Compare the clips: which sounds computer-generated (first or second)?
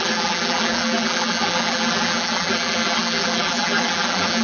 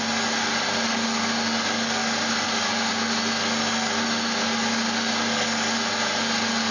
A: first